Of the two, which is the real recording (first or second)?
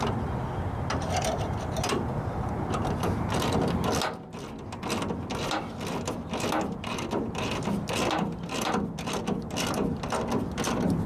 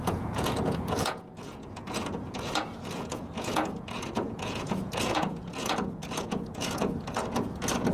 first